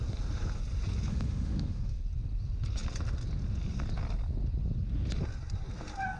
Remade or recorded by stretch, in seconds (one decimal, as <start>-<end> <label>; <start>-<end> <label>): 0.0-1.1 recorded; 1.1-2.0 remade; 2.0-6.2 recorded